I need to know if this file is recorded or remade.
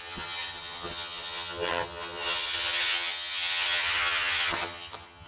remade